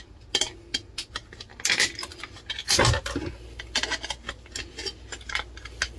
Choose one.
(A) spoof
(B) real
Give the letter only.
B